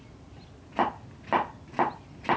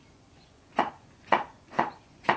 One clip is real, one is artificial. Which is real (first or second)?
first